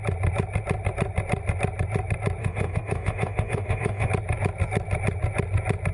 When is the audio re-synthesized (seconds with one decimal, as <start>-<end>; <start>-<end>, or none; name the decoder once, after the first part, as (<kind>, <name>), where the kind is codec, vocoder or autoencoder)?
2.4-4.1 (autoencoder, DAC-VAE)